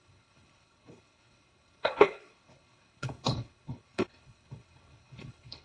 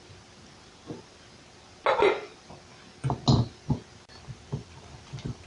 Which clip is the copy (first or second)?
first